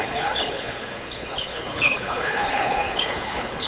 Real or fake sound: fake